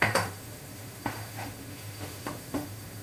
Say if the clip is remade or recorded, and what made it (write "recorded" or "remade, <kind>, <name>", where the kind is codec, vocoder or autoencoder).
remade, autoencoder, DAC-VAE